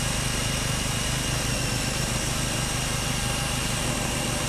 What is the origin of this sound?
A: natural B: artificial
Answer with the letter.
B